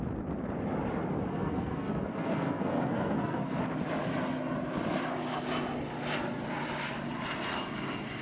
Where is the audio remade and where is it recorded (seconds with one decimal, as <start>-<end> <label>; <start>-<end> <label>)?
0.0-1.3 recorded; 1.3-3.6 remade; 3.6-8.2 recorded